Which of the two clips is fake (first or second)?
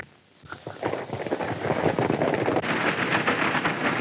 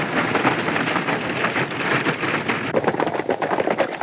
second